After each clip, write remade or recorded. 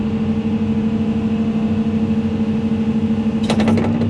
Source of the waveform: recorded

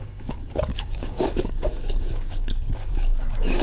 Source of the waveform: remade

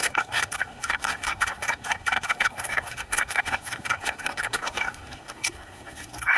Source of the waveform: remade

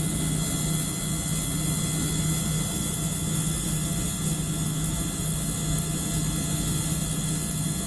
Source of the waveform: recorded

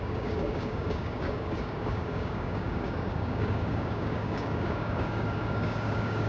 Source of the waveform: remade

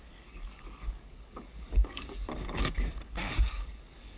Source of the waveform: remade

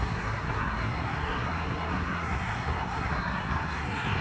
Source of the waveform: remade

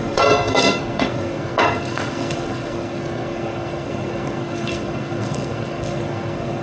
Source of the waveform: remade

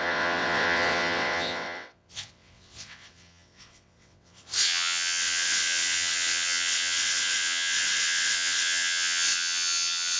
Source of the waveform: remade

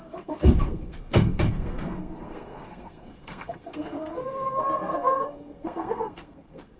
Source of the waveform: remade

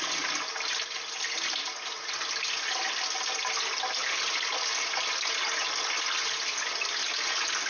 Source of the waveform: recorded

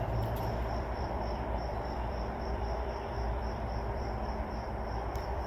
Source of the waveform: remade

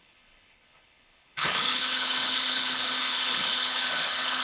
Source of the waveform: remade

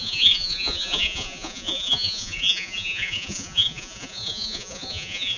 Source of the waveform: remade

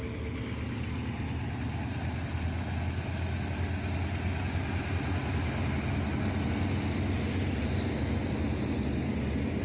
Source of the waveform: recorded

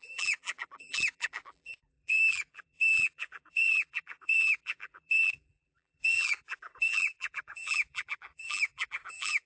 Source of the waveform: remade